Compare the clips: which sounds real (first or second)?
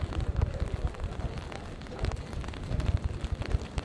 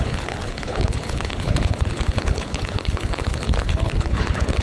first